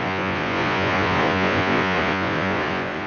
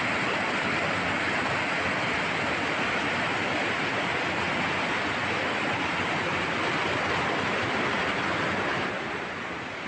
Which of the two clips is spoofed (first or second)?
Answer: first